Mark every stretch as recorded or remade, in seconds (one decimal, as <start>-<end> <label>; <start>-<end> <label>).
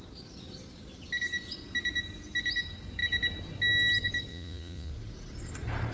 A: 0.0-4.3 recorded; 4.3-4.9 remade; 4.9-5.9 recorded